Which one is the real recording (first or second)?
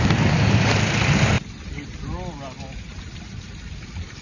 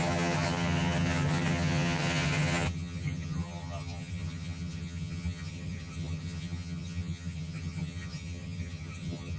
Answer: first